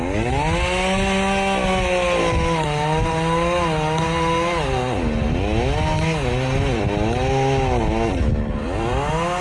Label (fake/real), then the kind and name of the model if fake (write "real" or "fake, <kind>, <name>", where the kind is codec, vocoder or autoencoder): real